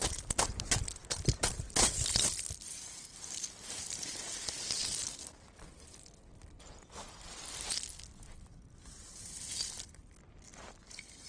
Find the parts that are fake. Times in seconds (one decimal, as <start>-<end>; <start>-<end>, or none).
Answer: none